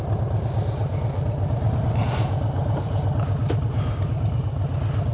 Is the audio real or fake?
real